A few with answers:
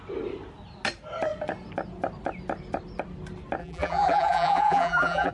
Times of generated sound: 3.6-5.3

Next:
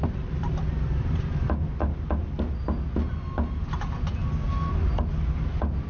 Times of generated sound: none

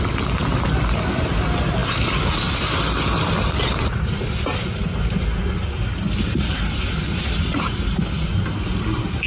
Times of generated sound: none

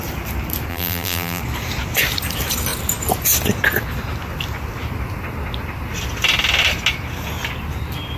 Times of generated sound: 0.7-1.4

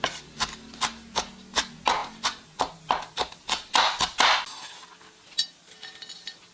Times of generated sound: none